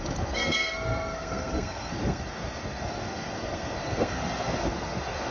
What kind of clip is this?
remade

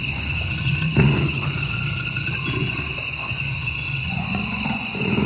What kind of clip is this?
remade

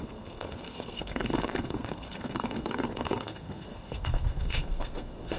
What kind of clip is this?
remade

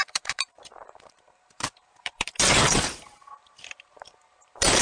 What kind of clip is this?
remade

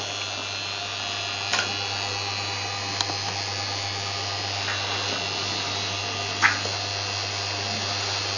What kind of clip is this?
recorded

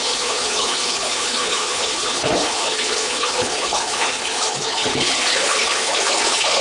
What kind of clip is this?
remade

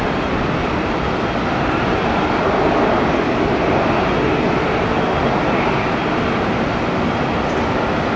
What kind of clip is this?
recorded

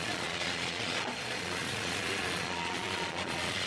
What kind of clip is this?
remade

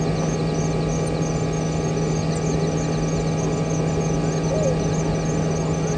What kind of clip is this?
recorded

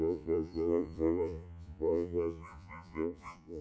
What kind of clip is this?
remade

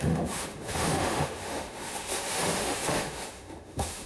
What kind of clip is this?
remade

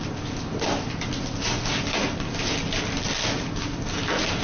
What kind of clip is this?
recorded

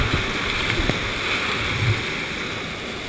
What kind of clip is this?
recorded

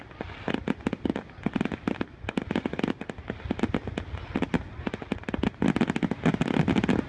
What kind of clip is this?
recorded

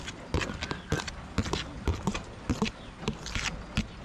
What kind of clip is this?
recorded